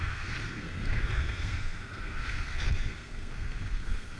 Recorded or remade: remade